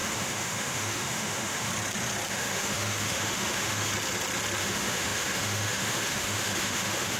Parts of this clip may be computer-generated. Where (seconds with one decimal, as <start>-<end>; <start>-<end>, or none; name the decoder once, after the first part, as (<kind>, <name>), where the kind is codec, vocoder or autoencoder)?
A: 0.0-1.7 (autoencoder, DAC-VAE); 2.3-3.9; 4.6-7.2